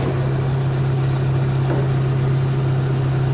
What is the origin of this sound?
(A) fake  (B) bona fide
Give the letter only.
B